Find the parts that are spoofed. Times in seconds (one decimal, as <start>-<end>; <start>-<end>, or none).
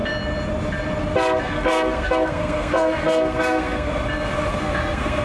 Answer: 1.4-3.9; 4.5-5.2